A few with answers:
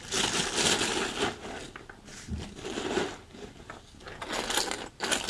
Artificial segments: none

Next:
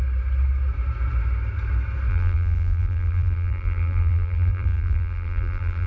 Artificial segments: 2.1-5.9 (vocoder, BigVGAN v2)

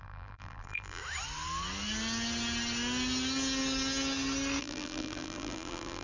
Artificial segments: 0.0-1.0 (vocoder, BigVGAN v2); 4.6-6.0

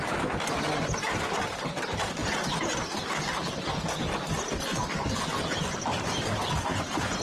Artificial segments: none

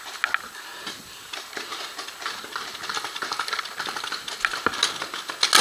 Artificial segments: none

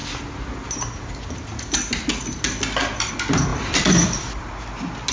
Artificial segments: 3.5-4.5 (vocoder, BigVGAN v2)

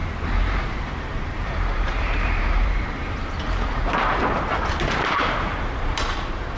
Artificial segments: 0.6-6.6 (vocoder, BigVGAN v2)

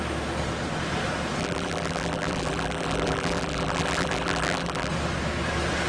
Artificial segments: 1.4-4.9 (vocoder, BigVGAN v2)